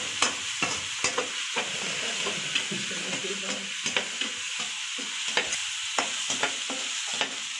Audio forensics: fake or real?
real